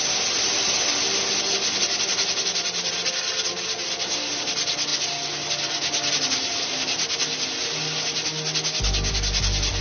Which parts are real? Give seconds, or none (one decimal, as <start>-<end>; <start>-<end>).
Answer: 0.0-9.8